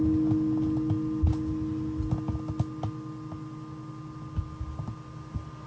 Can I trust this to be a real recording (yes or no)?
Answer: yes